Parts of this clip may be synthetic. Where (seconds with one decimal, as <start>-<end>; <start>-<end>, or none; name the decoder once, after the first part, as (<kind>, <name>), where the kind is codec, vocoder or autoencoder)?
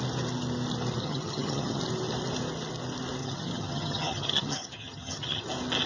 1.0-1.8 (vocoder, HiFi-GAN); 3.2-5.5